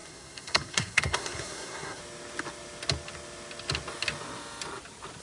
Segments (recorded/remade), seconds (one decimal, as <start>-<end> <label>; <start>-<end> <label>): 0.0-2.0 remade; 2.0-5.2 recorded